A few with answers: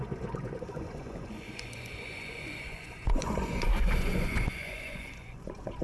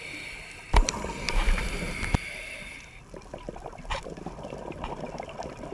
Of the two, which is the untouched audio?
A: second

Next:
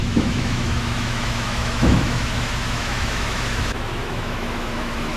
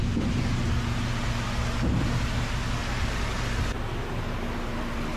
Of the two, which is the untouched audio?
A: second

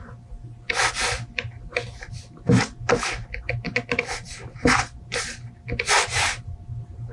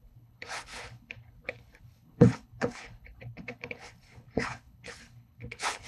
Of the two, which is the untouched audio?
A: first